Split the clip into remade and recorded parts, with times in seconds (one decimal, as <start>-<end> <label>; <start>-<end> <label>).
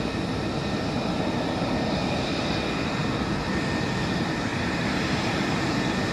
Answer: 0.0-4.5 recorded; 4.5-6.1 remade